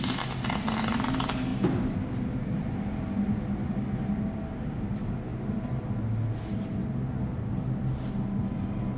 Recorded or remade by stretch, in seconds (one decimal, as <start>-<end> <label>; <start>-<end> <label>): 0.0-9.0 recorded